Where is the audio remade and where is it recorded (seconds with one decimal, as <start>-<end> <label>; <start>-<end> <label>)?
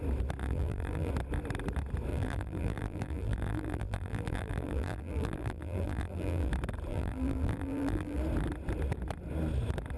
0.0-0.4 recorded; 0.4-1.1 remade; 1.1-2.1 recorded; 2.1-6.5 remade; 6.5-6.9 recorded; 6.9-8.2 remade; 8.2-10.0 recorded